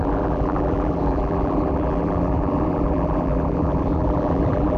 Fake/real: fake